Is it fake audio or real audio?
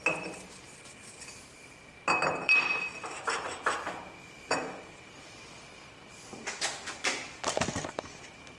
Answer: real